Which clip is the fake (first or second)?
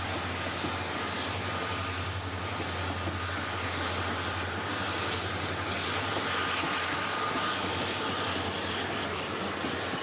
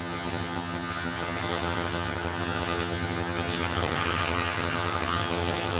second